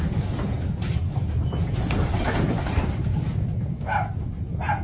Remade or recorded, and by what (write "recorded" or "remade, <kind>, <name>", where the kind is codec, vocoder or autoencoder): recorded